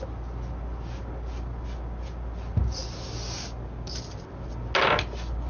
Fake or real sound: real